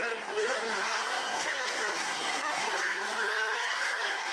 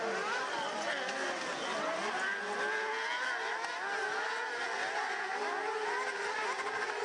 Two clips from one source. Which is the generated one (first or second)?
first